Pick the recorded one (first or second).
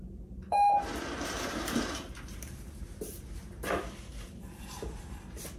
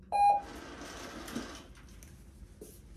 second